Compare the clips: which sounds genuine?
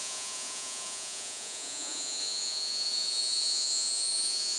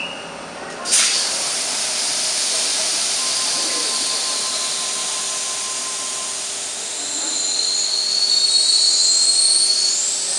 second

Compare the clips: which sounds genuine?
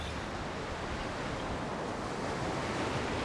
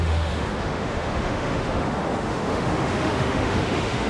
first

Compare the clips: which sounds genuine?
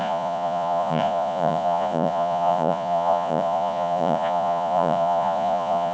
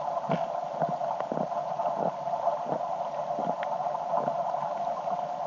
second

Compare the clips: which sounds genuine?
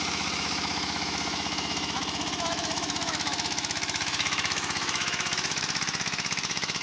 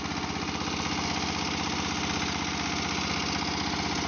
second